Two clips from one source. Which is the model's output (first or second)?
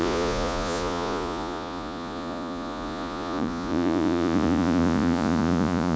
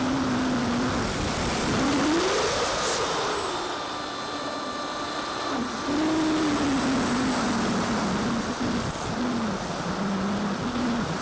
first